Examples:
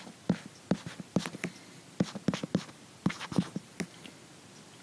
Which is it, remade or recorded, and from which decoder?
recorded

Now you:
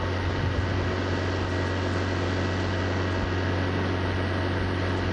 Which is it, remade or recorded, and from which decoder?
recorded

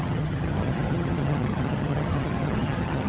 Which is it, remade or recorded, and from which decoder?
remade, vocoder, HiFi-GAN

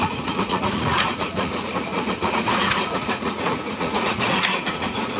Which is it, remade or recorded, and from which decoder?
remade, vocoder, Vocos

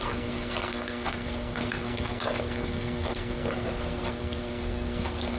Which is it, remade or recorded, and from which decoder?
remade, codec, SNAC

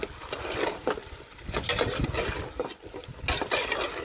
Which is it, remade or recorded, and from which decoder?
recorded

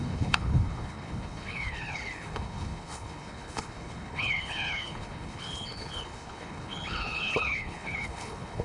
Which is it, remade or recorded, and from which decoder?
remade, codec, HILCodec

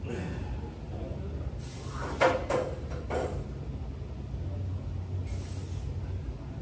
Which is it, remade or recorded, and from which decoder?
recorded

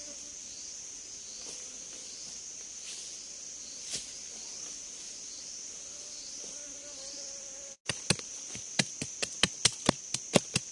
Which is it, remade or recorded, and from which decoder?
recorded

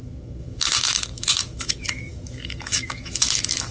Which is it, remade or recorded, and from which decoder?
remade, autoencoder, DAC-VAE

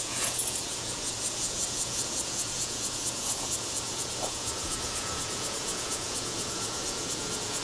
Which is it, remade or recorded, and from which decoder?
remade, vocoder, Vocos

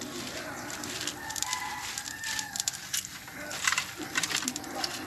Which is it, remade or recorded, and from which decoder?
remade, vocoder, BigVGAN v2